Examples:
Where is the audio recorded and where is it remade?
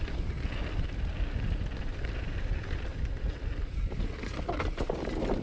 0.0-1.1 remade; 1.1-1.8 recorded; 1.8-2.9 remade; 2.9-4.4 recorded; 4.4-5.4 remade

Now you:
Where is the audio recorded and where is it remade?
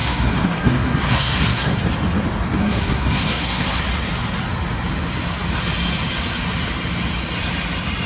0.0-1.8 remade; 1.8-2.6 recorded; 2.6-3.8 remade; 3.8-8.1 recorded